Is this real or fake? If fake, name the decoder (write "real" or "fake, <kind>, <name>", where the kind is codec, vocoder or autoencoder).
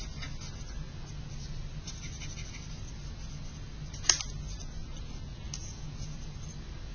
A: real